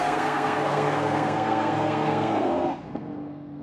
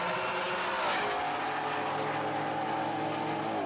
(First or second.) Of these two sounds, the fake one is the first